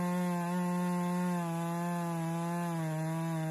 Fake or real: real